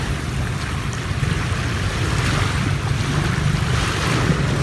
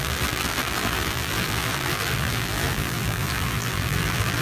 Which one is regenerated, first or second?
second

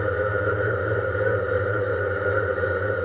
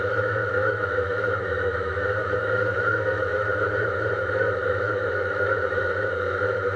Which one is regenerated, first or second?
second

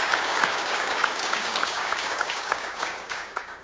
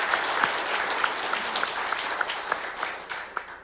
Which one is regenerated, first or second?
first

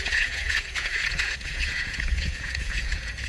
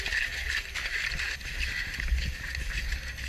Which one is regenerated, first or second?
first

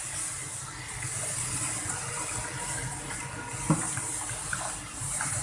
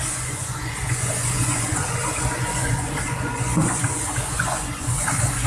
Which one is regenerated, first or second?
second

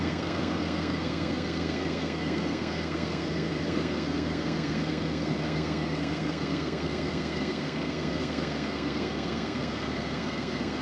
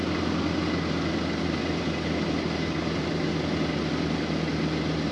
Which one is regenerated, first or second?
first